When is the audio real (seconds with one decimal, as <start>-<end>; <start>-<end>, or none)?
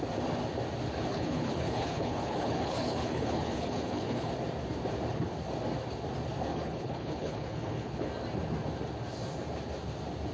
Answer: 0.0-1.1; 4.3-6.5; 8.1-10.3